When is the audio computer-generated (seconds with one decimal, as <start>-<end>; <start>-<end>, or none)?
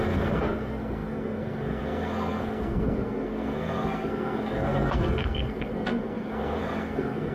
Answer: 0.0-7.3